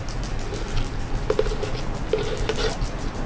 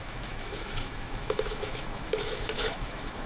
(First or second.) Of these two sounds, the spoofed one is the second